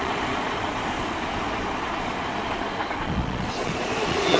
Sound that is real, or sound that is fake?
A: fake